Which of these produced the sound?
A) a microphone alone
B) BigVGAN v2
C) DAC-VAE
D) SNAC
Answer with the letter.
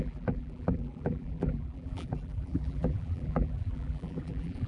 B